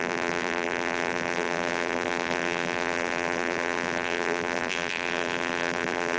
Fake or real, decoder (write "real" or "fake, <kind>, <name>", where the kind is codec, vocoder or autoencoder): fake, vocoder, BigVGAN v2